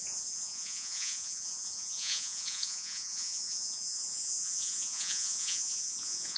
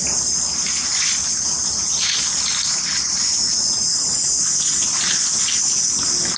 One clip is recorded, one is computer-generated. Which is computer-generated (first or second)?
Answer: first